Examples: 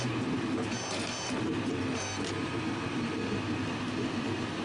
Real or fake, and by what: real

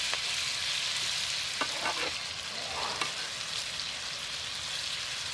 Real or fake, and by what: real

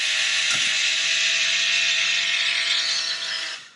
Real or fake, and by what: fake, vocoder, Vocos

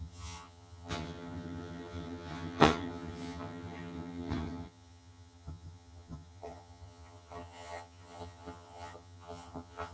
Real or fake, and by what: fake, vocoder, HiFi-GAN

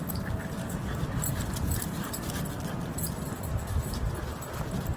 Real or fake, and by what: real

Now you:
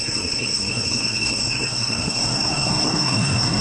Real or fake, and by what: fake, codec, SNAC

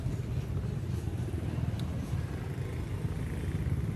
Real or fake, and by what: real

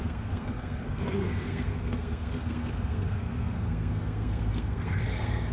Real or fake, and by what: fake, codec, SNAC